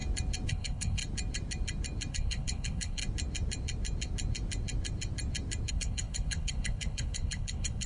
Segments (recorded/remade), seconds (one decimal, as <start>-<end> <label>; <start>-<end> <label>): 0.0-0.5 recorded; 0.5-1.0 remade; 1.0-2.1 recorded; 2.1-3.0 remade; 3.0-5.7 recorded; 5.7-7.9 remade

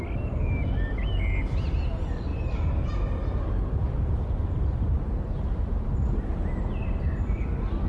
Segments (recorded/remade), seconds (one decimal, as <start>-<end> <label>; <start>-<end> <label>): 0.0-7.9 recorded

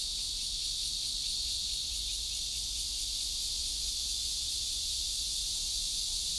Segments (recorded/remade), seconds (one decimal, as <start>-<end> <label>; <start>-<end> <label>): 0.0-1.3 recorded; 1.3-2.1 remade; 2.1-3.6 recorded; 3.6-6.4 remade

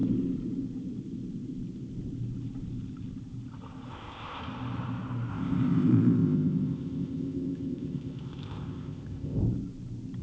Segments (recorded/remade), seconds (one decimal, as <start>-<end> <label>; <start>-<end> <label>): 0.0-3.9 recorded; 3.9-4.4 remade; 4.4-5.3 recorded; 5.3-9.4 remade; 9.4-10.2 recorded

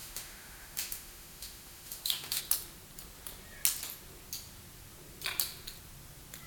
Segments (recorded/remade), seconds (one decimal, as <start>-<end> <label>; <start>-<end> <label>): 0.0-2.4 remade; 2.4-6.5 recorded

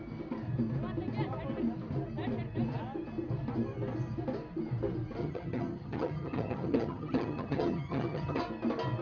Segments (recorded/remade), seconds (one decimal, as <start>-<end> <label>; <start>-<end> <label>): 0.0-5.2 recorded; 5.2-8.4 remade; 8.4-9.0 recorded

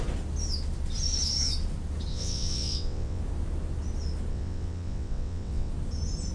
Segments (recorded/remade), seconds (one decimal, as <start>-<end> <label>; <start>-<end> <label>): 0.0-2.1 recorded; 2.1-3.2 remade; 3.2-4.3 recorded; 4.3-5.7 remade; 5.7-6.3 recorded

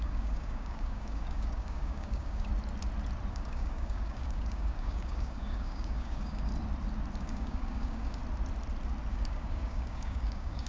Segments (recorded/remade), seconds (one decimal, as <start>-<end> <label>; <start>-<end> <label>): 0.0-2.5 remade; 2.5-3.3 recorded; 3.3-6.5 remade; 6.5-7.2 recorded; 7.2-8.2 remade; 8.2-9.1 recorded; 9.1-10.7 remade